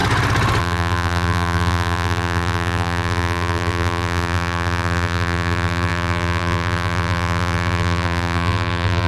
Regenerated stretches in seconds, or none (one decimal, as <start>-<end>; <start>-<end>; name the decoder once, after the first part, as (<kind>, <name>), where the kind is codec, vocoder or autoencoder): 0.6-9.1 (vocoder, BigVGAN v2)